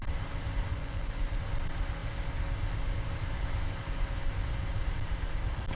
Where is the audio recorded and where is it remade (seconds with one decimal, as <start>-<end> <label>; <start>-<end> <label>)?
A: 0.0-0.7 recorded; 0.7-1.4 remade; 1.4-5.8 recorded